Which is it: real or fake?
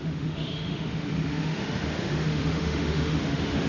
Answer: fake